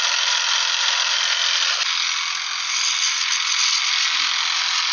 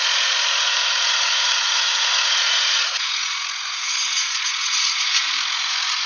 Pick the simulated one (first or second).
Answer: second